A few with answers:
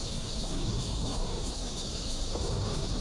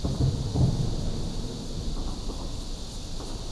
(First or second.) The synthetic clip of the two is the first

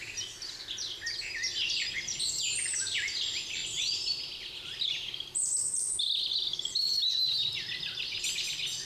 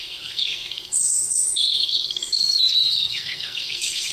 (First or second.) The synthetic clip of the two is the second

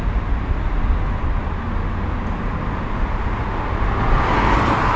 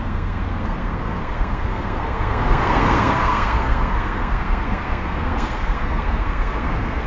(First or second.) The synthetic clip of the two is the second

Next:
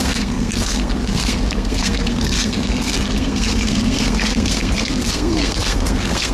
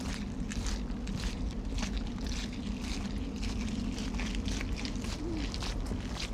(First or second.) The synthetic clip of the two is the first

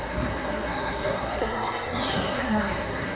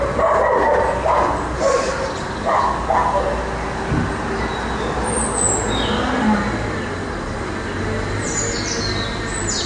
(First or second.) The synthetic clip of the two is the first